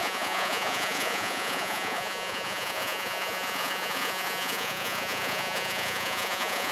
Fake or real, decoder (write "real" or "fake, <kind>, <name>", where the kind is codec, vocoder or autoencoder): fake, vocoder, Vocos